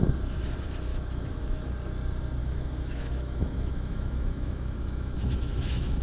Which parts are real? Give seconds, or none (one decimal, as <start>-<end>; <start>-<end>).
0.0-0.9; 1.7-2.4